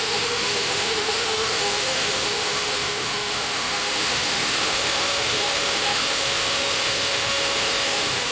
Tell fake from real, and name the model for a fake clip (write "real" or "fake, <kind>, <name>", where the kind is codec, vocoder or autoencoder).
fake, autoencoder, DAC-VAE